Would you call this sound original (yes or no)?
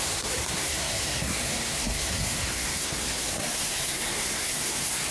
no